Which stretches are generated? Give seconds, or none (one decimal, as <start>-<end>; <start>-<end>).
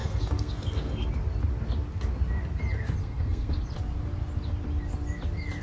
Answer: 0.0-1.1; 3.0-3.6